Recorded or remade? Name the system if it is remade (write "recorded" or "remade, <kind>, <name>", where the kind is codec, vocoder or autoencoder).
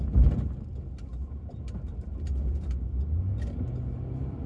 recorded